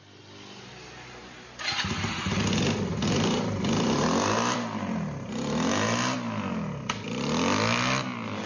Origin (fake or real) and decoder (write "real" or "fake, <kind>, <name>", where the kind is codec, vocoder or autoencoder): real